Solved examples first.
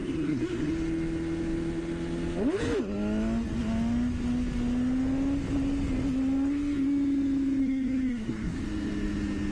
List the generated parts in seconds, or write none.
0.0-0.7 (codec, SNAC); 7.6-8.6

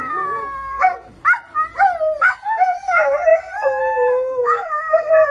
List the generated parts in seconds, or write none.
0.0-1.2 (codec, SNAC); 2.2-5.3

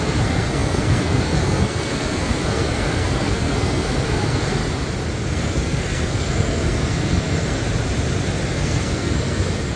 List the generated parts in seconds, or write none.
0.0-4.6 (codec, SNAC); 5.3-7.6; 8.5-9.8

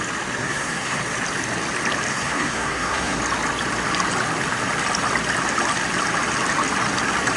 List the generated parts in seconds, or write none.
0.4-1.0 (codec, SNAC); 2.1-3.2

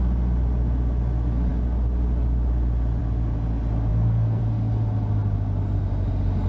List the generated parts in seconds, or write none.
3.9-4.4 (codec, SNAC)

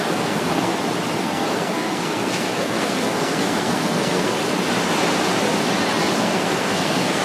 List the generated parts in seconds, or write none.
0.0-0.7 (codec, SNAC); 1.2-4.4; 6.2-7.2